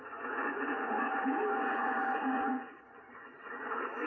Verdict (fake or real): fake